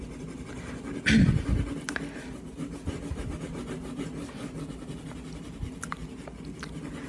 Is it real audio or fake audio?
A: real